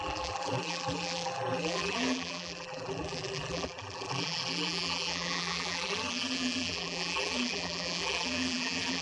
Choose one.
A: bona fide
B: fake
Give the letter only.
B